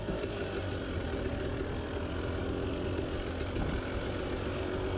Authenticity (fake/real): real